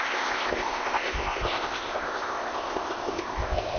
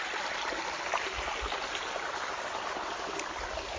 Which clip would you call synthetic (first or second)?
first